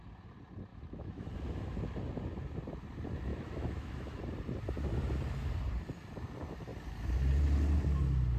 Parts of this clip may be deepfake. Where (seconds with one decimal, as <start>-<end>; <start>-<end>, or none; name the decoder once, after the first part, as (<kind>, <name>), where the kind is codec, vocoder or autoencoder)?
0.7-1.3 (autoencoder, DAC-VAE); 3.3-4.2